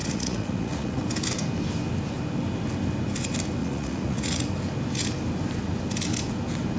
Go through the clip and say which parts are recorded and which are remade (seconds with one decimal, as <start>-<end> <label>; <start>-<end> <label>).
0.0-1.0 remade; 1.0-3.6 recorded; 3.6-4.5 remade; 4.5-6.8 recorded